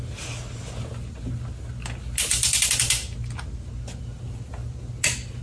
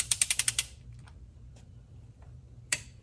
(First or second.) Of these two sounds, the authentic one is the first